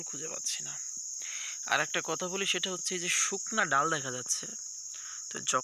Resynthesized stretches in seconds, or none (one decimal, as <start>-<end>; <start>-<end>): 2.8-3.6; 4.5-5.6